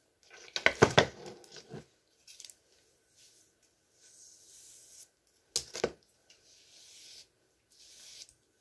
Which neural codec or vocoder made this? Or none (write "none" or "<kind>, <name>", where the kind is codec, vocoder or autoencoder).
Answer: none